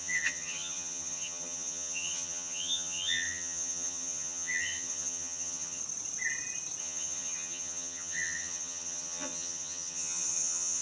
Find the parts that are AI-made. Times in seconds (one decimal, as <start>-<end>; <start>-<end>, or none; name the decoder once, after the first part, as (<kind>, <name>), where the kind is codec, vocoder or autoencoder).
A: 0.0-5.8 (vocoder, HiFi-GAN); 6.8-10.8